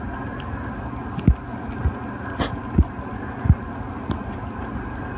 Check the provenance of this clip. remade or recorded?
recorded